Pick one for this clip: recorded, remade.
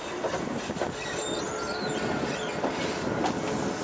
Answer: recorded